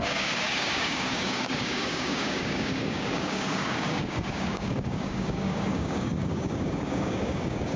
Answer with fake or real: fake